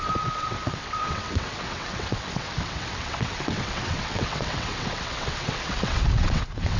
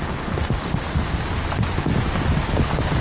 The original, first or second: second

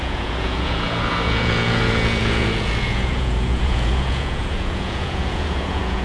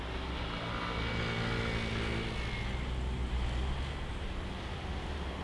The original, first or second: second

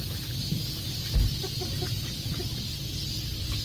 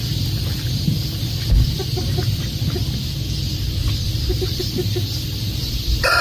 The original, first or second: first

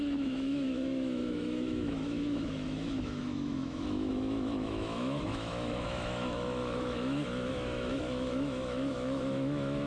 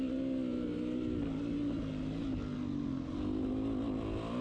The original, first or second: second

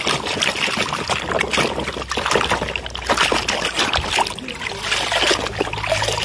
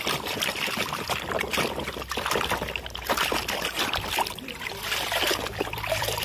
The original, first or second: first